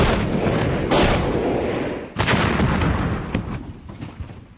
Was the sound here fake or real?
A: real